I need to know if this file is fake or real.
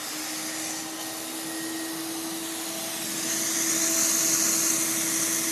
real